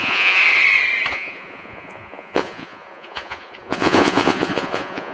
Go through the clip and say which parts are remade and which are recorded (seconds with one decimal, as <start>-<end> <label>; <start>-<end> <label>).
0.0-0.4 remade; 0.4-1.1 recorded; 1.1-5.1 remade